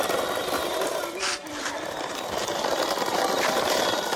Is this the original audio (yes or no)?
no